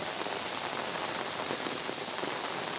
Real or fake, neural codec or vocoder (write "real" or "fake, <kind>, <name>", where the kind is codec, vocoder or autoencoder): real